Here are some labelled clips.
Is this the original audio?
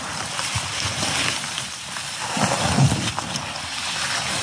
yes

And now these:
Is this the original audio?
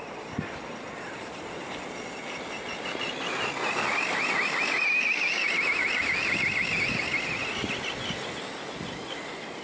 yes